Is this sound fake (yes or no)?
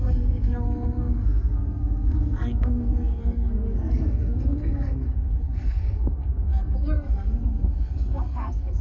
yes